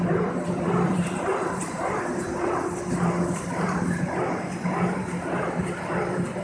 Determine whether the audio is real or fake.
fake